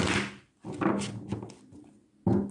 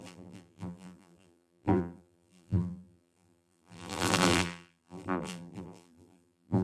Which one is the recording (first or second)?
first